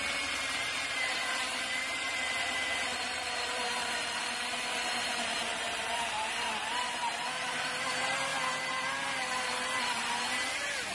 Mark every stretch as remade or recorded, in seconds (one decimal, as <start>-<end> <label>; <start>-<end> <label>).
0.0-8.3 remade; 8.3-10.9 recorded